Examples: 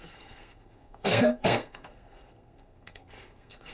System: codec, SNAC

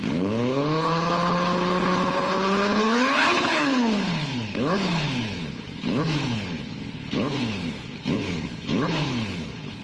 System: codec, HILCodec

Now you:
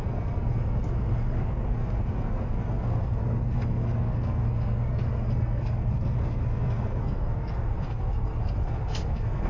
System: codec, SNAC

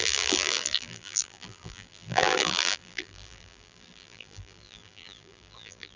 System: vocoder, BigVGAN v2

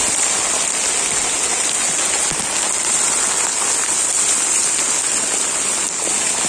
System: none